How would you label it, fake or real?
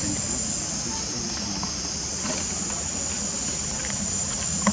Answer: real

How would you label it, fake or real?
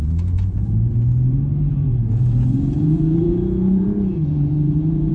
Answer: fake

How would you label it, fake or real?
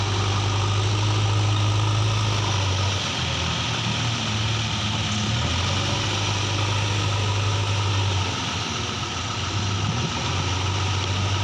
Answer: real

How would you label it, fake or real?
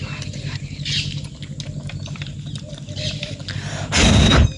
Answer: real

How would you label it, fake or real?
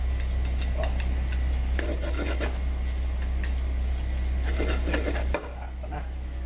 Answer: real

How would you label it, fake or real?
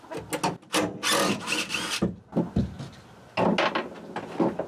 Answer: real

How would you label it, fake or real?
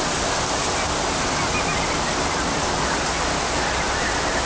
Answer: real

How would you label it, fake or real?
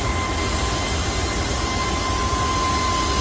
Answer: real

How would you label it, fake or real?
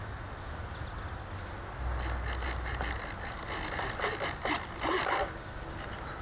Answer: real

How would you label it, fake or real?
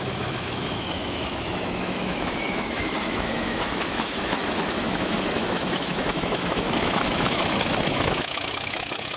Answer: fake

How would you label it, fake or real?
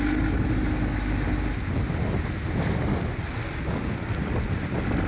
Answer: real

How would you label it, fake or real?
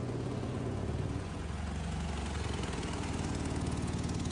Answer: fake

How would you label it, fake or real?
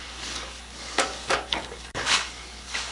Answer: fake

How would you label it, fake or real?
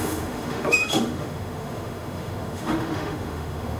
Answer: fake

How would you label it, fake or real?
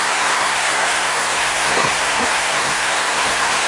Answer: fake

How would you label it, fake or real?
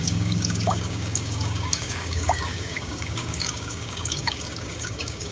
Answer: fake